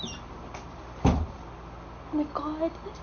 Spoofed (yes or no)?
no